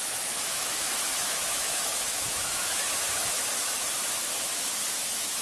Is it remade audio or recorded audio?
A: remade